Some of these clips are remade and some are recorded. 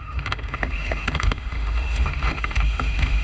remade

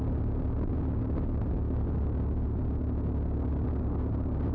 recorded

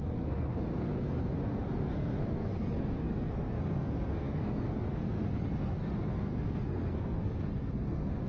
remade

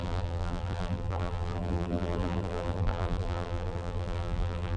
remade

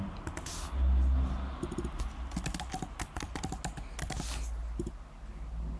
recorded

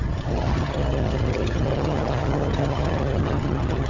remade